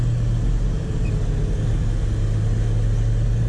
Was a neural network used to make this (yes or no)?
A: no